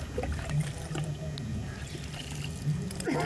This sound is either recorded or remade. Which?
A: remade